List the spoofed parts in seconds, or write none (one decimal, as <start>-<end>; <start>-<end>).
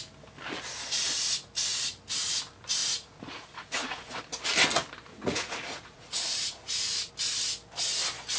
2.8-4.2; 5.1-7.1